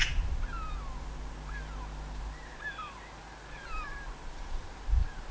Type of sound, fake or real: real